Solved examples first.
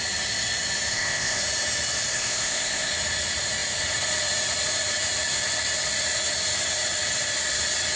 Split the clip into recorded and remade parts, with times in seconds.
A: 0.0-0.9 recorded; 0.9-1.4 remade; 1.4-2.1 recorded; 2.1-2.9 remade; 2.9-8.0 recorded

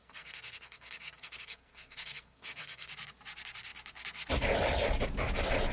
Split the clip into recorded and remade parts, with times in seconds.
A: 0.0-2.9 remade; 2.9-5.7 recorded

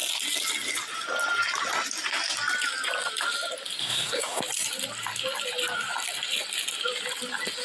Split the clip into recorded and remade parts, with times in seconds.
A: 0.0-3.8 recorded; 3.8-4.4 remade; 4.4-7.6 recorded

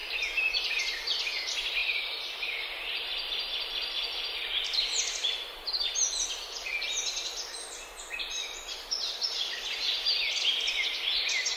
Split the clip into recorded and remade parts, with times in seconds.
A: 0.0-11.6 recorded

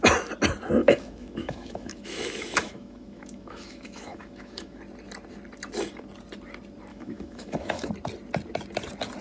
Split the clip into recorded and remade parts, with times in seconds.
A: 0.0-0.8 recorded; 0.8-4.8 remade; 4.8-6.9 recorded; 6.9-7.9 remade; 7.9-9.2 recorded